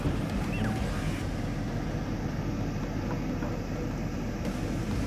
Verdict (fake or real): real